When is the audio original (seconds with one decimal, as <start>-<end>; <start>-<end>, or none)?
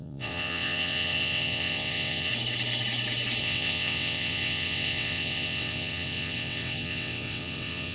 2.3-3.4